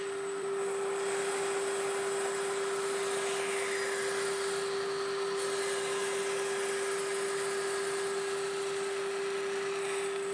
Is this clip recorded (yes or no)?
yes